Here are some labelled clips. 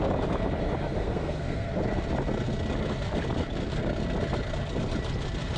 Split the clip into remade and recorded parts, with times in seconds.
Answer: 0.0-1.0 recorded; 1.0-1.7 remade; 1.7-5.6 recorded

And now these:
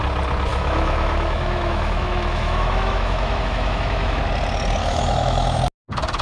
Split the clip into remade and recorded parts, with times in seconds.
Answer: 0.0-0.5 recorded; 0.5-4.2 remade; 4.2-4.8 recorded; 4.8-5.6 remade; 5.6-6.2 recorded

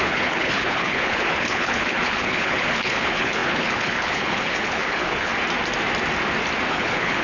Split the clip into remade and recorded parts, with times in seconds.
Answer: 0.0-5.3 remade; 5.3-6.7 recorded; 6.7-7.2 remade

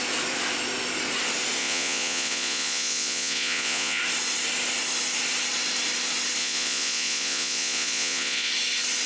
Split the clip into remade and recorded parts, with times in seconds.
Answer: 0.0-1.6 recorded; 1.6-4.0 remade; 4.0-6.4 recorded; 6.4-8.5 remade; 8.5-9.1 recorded

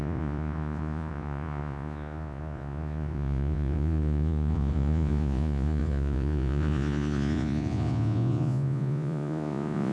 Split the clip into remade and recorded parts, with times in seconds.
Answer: 0.0-9.9 remade

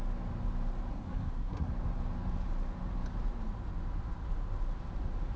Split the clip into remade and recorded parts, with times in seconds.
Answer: 0.0-0.9 recorded; 0.9-1.7 remade; 1.7-5.4 recorded

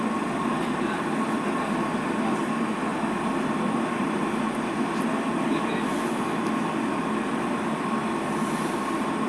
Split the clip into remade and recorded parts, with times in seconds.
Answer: 0.0-2.9 recorded; 2.9-3.6 remade; 3.6-9.3 recorded